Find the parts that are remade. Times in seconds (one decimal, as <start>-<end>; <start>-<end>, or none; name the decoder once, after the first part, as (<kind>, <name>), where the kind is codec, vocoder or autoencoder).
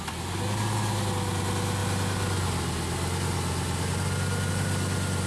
none